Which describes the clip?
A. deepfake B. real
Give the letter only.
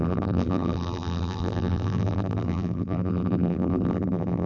A